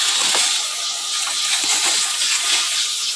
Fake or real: fake